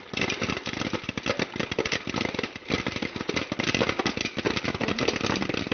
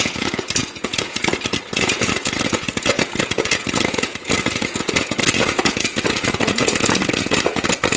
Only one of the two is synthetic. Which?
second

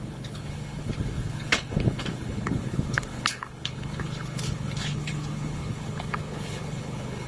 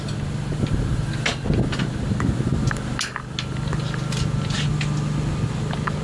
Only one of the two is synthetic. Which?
first